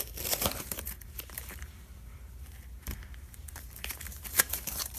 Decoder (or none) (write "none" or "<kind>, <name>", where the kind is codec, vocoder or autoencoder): vocoder, BigVGAN v2